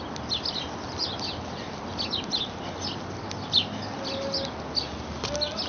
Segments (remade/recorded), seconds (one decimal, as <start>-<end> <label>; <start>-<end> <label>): 0.0-5.7 recorded